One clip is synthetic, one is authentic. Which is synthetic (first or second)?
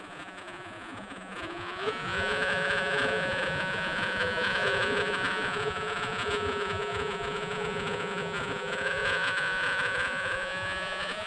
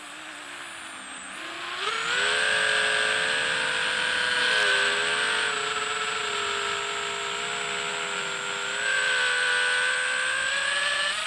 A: first